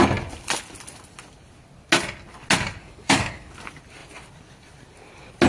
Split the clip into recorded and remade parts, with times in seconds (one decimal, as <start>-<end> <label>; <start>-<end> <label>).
0.0-2.8 recorded; 2.8-3.5 remade; 3.5-5.5 recorded